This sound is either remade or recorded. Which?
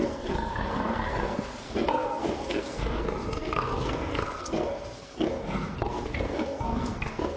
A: remade